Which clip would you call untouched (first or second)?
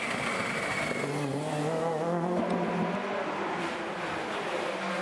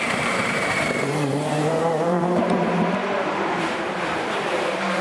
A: first